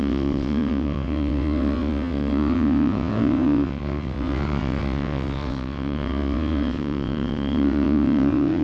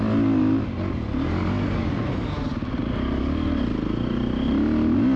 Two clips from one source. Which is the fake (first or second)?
first